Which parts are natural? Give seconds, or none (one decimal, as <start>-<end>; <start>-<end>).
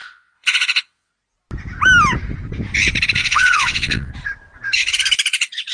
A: 1.1-3.2; 4.1-5.7